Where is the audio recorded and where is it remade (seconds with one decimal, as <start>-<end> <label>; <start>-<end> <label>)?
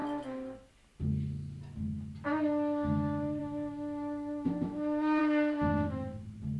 0.0-3.4 recorded; 3.4-5.2 remade; 5.2-6.6 recorded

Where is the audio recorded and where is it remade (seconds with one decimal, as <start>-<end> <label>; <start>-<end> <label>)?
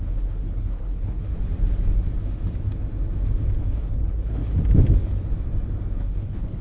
0.0-1.3 remade; 1.3-3.6 recorded; 3.6-4.4 remade; 4.4-6.0 recorded; 6.0-6.6 remade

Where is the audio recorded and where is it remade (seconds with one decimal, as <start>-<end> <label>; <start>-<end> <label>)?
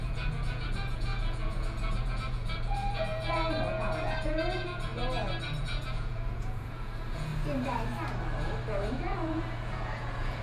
0.0-4.9 remade; 4.9-5.6 recorded; 5.6-7.3 remade; 7.3-8.9 recorded; 8.9-10.4 remade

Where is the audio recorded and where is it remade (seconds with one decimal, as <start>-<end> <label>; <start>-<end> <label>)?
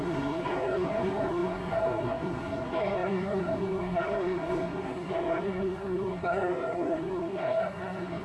0.0-8.2 remade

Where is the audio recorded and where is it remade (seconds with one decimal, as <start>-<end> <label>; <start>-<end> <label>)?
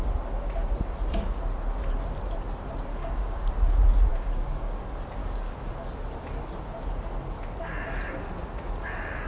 0.0-2.9 recorded; 2.9-3.5 remade; 3.5-4.1 recorded; 4.1-4.8 remade; 4.8-5.2 recorded; 5.2-5.7 remade; 5.7-9.3 recorded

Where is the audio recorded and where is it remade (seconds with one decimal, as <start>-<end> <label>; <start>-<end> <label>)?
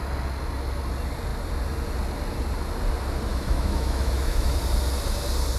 0.0-3.3 recorded; 3.3-4.6 remade; 4.6-5.6 recorded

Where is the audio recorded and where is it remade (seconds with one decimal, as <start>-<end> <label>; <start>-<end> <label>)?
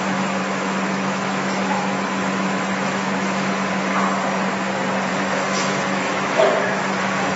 0.0-0.4 recorded; 0.4-3.5 remade; 3.5-5.1 recorded; 5.1-6.8 remade; 6.8-7.4 recorded